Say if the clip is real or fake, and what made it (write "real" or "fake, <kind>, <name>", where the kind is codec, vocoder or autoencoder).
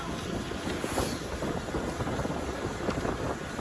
real